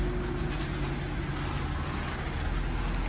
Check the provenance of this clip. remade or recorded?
recorded